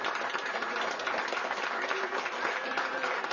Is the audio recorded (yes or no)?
no